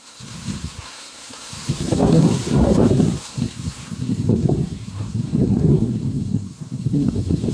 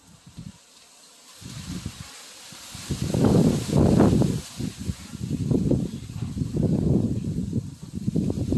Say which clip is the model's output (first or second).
first